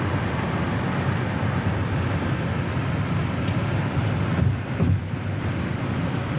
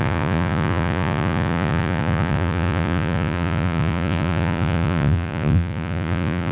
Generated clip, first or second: second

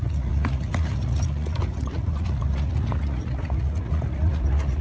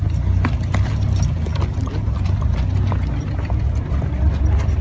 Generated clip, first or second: first